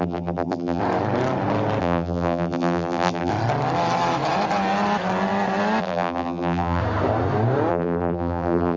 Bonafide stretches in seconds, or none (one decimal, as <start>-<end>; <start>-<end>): 0.8-1.8; 3.3-5.8; 6.8-7.7